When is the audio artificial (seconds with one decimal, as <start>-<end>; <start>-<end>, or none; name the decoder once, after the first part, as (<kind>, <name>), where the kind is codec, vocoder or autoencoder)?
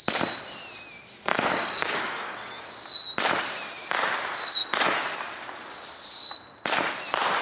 1.3-2.7 (codec, DAC)